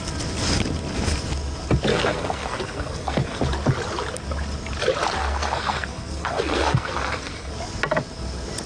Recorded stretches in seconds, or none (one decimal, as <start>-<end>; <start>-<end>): 0.0-1.9; 3.4-5.2; 7.5-8.7